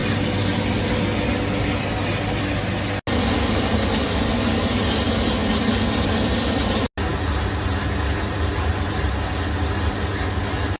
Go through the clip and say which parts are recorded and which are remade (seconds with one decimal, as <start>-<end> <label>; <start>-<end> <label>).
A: 0.0-10.8 recorded